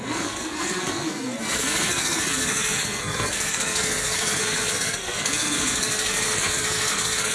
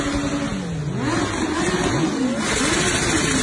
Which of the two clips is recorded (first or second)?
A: second